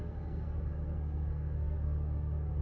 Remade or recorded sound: remade